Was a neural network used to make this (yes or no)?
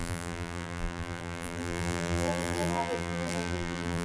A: yes